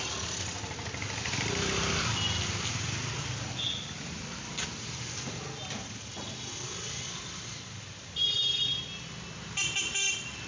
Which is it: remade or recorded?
recorded